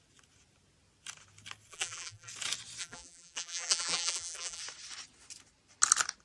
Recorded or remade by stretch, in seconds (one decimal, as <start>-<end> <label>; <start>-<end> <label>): 0.0-1.7 recorded; 1.7-2.3 remade; 2.3-2.8 recorded; 2.8-4.6 remade; 4.6-6.2 recorded